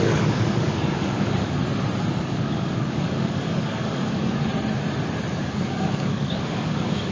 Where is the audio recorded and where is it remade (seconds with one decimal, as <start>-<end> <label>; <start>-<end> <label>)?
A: 0.0-1.6 remade; 1.6-2.2 recorded; 2.2-4.5 remade; 4.5-5.4 recorded; 5.4-7.1 remade